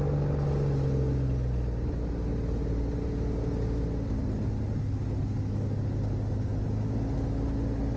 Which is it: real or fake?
real